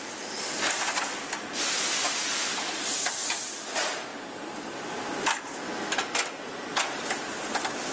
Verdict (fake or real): real